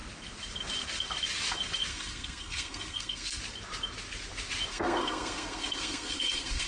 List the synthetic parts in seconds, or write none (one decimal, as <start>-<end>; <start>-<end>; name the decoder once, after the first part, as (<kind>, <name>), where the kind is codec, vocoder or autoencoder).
1.9-3.4 (codec, SNAC); 4.7-6.7